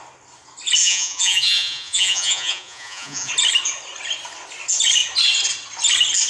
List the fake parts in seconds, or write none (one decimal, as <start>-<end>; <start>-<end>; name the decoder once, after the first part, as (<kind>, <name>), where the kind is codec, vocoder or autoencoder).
0.8-3.3 (vocoder, Vocos)